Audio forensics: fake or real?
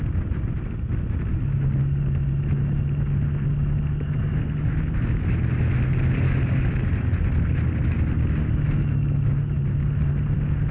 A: real